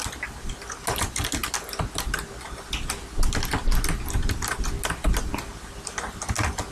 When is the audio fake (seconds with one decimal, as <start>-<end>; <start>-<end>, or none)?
none